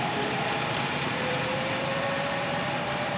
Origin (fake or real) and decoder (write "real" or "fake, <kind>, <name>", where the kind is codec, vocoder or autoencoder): fake, vocoder, BigVGAN v2